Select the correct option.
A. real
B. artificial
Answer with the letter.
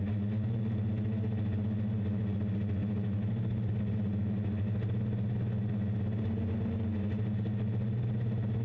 A